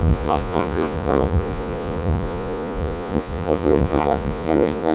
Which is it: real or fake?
fake